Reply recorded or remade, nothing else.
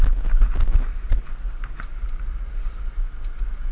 recorded